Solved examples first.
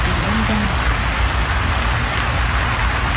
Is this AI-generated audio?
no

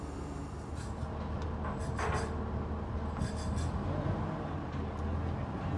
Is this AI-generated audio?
no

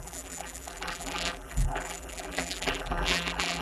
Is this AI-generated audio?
yes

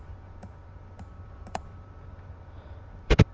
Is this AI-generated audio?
yes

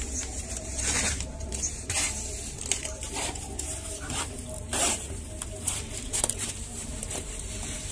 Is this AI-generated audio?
yes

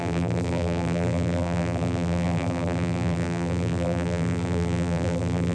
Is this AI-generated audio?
yes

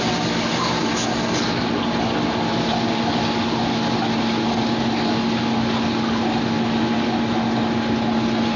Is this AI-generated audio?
no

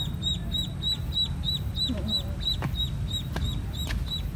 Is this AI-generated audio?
no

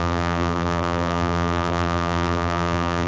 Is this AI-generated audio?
yes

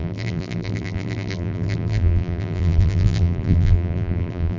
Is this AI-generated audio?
yes